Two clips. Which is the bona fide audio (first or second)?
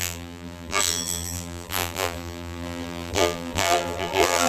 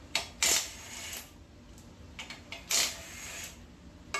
second